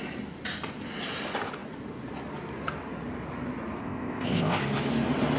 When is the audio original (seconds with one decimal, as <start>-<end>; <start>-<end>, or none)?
0.0-3.8; 4.6-5.4